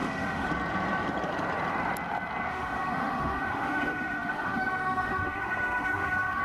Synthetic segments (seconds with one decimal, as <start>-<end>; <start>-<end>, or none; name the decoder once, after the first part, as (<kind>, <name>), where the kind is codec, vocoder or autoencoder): 0.0-0.5 (autoencoder, DAC-VAE); 2.5-6.4